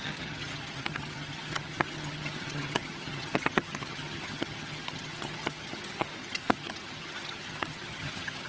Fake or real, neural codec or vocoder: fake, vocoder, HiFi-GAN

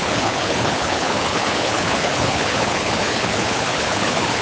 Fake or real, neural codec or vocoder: fake, codec, HILCodec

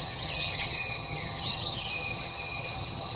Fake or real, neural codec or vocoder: fake, vocoder, HiFi-GAN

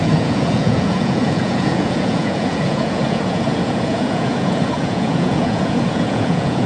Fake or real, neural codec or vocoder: fake, vocoder, Vocos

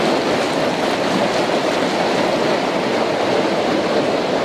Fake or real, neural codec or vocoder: real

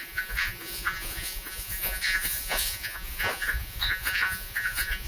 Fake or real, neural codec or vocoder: fake, vocoder, Vocos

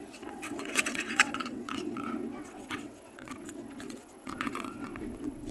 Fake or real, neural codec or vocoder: fake, vocoder, WaveNeXt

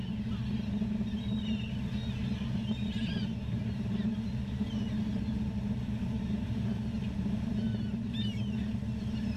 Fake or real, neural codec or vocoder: real